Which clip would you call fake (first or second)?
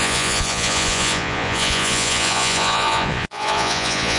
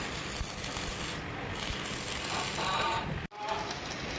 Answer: first